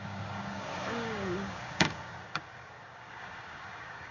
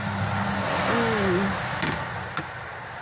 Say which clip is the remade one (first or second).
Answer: first